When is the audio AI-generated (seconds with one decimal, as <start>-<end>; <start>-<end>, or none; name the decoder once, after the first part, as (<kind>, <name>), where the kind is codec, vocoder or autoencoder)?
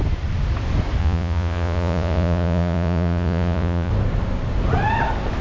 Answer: 1.0-3.9 (vocoder, Vocos)